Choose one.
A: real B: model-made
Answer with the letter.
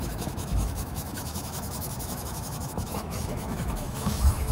B